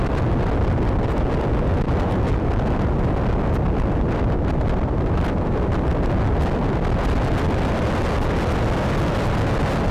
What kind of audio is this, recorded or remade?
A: recorded